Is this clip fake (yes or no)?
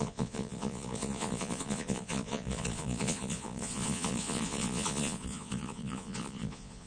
yes